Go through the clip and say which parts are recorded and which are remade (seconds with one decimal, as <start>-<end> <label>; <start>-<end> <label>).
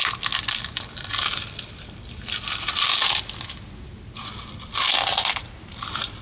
0.0-6.2 recorded